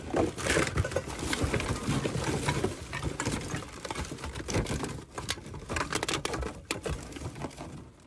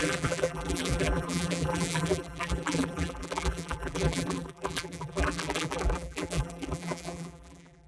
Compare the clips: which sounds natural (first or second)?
first